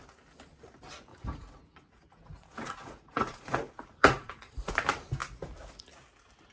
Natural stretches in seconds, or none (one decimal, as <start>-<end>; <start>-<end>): 0.0-1.1; 4.7-6.5